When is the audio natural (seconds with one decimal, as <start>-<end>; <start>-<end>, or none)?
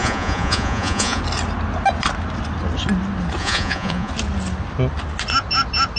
1.2-3.4; 4.1-6.0